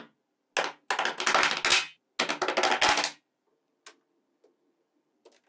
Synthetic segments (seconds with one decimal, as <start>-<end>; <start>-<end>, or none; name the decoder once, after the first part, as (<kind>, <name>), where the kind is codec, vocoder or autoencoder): none